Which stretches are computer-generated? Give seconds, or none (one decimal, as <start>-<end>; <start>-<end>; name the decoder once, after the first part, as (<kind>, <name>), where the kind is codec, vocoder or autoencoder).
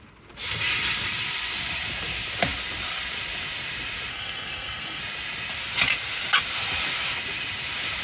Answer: 4.1-5.0 (codec, SNAC)